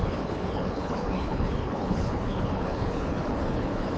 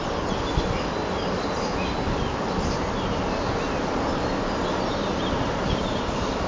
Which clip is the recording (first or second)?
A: second